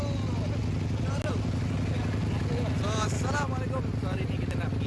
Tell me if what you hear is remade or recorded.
recorded